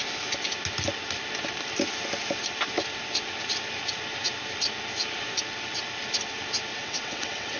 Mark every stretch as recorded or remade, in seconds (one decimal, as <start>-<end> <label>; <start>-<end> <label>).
0.0-6.7 recorded; 6.7-7.6 remade